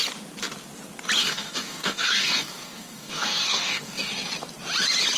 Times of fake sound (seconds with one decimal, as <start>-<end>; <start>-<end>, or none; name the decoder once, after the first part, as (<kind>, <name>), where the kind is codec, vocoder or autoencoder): 1.2-4.1 (codec, DAC)

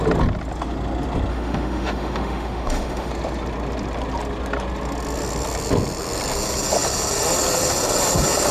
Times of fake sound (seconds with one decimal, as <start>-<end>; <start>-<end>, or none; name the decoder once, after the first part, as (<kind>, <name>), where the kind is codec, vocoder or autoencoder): 1.3-3.1 (autoencoder, DAC-VAE)

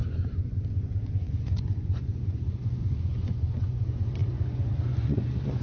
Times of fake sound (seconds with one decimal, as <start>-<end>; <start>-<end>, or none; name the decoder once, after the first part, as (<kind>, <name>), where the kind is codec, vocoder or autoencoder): 0.0-5.6 (vocoder, Vocos)

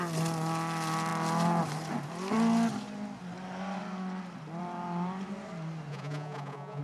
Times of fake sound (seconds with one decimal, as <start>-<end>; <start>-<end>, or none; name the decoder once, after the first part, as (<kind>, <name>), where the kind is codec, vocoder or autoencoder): 5.9-6.8 (vocoder, Vocos)

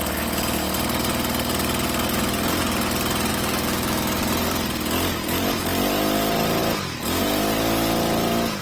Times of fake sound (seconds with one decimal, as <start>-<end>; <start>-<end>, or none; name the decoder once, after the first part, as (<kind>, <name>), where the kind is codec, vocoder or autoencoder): 3.3-4.2 (autoencoder, DAC-VAE)

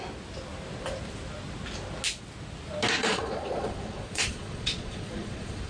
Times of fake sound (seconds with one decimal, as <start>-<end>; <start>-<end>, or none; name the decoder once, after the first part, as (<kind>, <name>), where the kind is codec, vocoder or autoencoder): 3.0-5.7 (vocoder, Vocos)

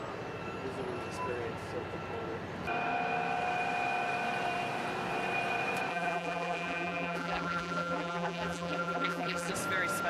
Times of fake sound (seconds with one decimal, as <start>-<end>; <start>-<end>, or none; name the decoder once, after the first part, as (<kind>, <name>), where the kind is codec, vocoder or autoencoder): 5.9-9.5 (vocoder, BigVGAN v2)

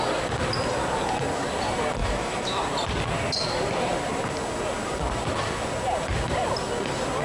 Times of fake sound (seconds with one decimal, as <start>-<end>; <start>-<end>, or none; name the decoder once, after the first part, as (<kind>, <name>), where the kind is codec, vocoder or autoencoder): 2.0-2.6 (autoencoder, DAC-VAE)